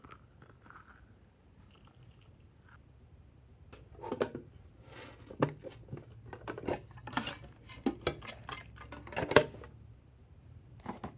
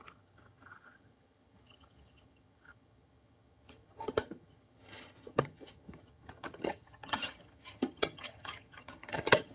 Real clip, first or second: first